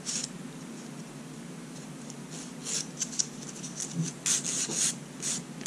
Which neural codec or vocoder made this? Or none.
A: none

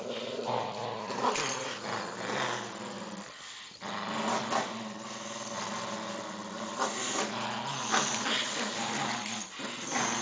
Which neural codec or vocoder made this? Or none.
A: none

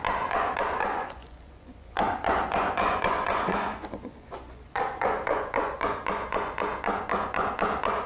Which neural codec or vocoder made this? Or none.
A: vocoder, Vocos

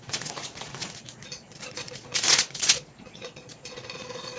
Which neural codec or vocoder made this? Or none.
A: vocoder, Vocos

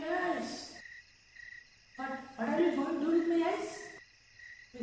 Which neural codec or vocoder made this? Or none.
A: none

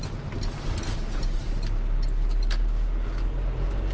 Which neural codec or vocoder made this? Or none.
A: none